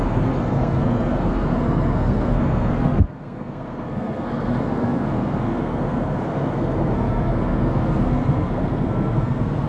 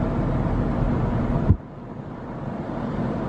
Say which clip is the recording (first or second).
second